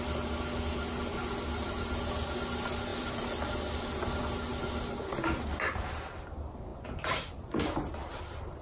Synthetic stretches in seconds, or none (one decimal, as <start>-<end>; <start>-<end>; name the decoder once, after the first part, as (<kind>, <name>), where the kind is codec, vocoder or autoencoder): 2.9-3.5 (vocoder, BigVGAN v2)